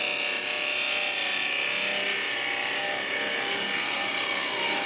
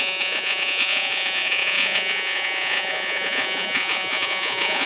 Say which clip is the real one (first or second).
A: first